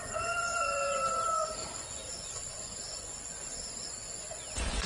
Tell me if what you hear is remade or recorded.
remade